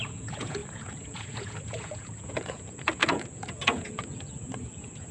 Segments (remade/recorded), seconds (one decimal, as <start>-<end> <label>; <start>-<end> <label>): 0.0-5.1 remade